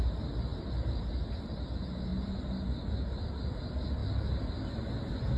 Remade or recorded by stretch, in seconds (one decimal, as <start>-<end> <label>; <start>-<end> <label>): 0.0-5.4 recorded